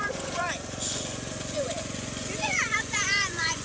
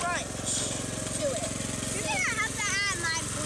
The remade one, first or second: first